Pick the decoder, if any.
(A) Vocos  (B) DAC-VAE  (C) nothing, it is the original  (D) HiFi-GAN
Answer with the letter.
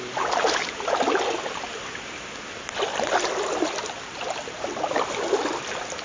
C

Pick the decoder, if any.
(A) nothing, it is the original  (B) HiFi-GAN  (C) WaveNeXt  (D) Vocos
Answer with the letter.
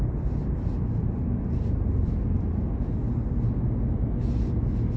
A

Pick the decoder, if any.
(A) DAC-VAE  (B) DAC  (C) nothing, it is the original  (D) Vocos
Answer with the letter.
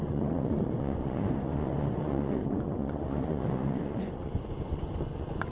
D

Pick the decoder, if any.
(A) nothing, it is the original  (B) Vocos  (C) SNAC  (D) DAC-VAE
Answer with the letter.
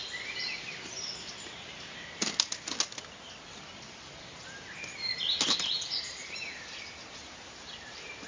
A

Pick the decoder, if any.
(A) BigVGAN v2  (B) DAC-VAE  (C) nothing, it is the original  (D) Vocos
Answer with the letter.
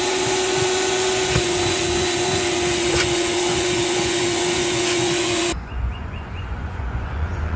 D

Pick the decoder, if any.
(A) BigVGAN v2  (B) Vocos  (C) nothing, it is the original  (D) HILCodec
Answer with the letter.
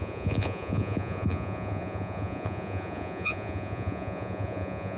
B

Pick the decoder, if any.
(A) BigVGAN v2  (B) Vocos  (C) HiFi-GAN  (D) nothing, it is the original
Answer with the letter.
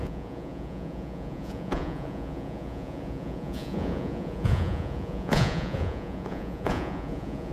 B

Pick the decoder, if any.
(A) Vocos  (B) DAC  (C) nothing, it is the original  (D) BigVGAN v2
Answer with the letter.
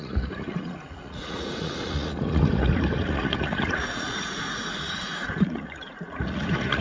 A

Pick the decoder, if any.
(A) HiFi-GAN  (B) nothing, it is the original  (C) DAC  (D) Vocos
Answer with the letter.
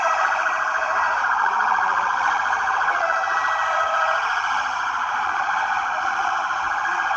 D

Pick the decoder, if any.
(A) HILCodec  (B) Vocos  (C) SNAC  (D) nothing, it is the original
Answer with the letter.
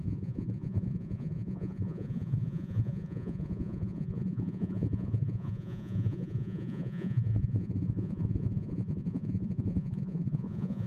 B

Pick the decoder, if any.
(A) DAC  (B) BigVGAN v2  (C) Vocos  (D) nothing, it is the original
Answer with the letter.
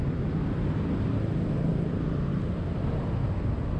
D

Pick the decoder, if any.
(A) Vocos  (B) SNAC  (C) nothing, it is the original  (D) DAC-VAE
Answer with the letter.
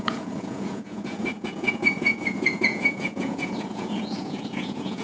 A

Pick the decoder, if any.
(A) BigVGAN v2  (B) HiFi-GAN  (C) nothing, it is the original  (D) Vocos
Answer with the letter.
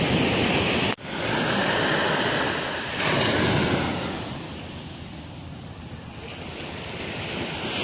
C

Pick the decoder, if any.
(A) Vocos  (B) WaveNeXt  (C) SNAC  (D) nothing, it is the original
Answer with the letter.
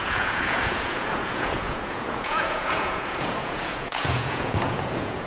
A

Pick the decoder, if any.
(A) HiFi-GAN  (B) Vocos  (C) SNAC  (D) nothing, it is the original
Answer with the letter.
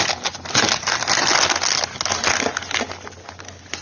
D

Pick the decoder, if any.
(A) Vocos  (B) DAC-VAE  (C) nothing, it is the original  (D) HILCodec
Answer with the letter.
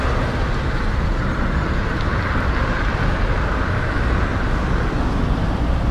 C